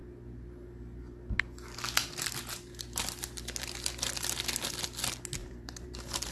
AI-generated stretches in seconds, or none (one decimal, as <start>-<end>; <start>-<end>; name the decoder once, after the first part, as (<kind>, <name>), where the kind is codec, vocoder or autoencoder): 5.4-6.3 (vocoder, BigVGAN v2)

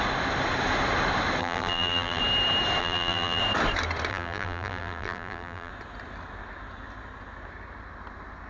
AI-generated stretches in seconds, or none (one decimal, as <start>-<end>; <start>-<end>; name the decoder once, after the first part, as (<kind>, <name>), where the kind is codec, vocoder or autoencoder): 1.4-2.2 (vocoder, BigVGAN v2); 2.8-3.4; 4.1-5.7

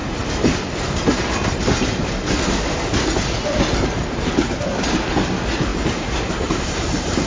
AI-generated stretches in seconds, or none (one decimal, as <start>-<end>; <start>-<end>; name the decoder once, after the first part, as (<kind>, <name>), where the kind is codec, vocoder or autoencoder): none

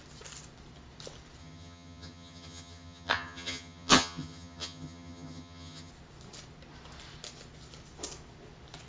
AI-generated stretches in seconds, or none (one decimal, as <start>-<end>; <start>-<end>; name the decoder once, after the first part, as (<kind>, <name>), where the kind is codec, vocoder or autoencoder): 1.4-5.9 (vocoder, HiFi-GAN)

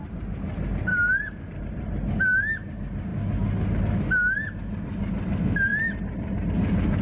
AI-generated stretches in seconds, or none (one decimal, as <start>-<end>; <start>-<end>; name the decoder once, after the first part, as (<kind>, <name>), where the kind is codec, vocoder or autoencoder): none

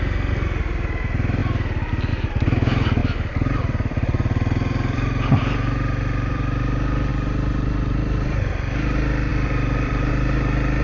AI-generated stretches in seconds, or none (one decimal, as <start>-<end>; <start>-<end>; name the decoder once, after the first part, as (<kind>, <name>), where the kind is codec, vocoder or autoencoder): 3.0-7.1 (vocoder, BigVGAN v2); 9.3-10.1

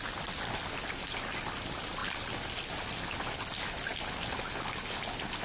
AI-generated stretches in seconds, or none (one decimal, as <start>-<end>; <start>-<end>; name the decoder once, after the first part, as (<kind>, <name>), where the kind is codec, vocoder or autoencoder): none

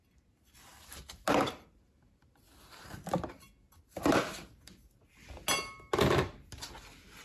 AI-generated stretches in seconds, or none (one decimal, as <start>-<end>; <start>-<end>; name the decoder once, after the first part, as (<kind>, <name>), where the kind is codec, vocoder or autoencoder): none